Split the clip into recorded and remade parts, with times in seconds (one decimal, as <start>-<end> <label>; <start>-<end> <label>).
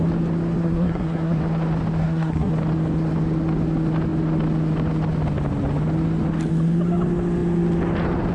0.0-0.6 recorded; 0.6-1.4 remade; 1.4-2.0 recorded; 2.0-2.5 remade; 2.5-8.3 recorded